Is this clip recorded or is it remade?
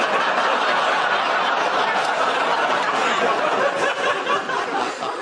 recorded